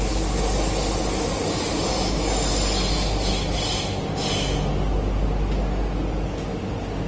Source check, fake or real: real